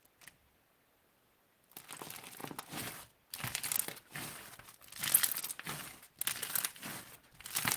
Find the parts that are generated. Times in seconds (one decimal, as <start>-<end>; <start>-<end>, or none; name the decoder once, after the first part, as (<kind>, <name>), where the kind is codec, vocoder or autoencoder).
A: none